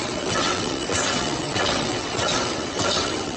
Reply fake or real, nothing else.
fake